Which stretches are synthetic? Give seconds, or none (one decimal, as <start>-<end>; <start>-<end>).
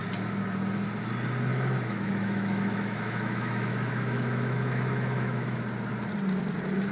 1.5-5.6